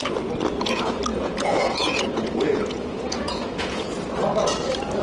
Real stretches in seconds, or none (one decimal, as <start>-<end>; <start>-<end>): 0.0-1.1; 3.9-5.0